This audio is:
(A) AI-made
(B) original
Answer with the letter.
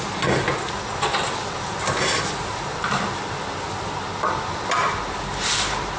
B